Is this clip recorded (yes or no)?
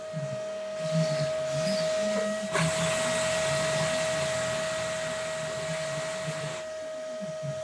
yes